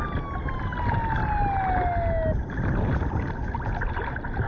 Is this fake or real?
real